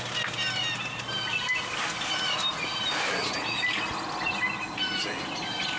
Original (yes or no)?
yes